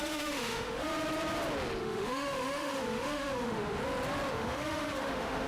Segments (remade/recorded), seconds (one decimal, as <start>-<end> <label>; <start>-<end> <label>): 0.0-0.9 remade; 0.9-1.8 recorded; 1.8-3.8 remade; 3.8-4.3 recorded; 4.3-5.5 remade